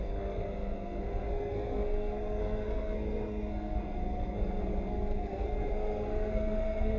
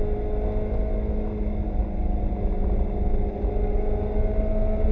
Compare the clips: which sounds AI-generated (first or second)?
first